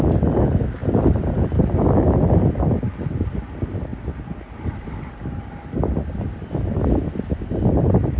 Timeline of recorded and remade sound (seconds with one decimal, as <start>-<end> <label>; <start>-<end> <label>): 0.0-3.9 recorded; 3.9-8.2 remade